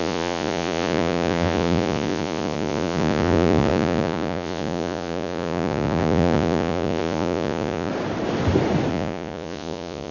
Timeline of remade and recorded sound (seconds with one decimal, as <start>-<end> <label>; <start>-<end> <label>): 0.0-7.9 remade; 7.9-8.9 recorded; 8.9-10.1 remade